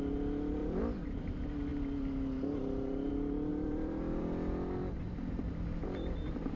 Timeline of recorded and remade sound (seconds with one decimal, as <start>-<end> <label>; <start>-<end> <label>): 0.0-0.6 recorded; 0.6-1.1 remade; 1.1-3.5 recorded; 3.5-4.2 remade; 4.2-6.6 recorded